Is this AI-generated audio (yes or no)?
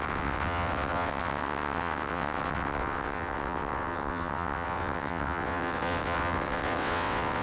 yes